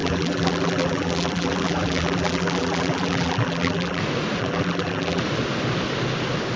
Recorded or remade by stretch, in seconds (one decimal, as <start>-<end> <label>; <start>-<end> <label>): 0.0-4.0 remade; 4.0-4.4 recorded; 4.4-5.2 remade; 5.2-6.6 recorded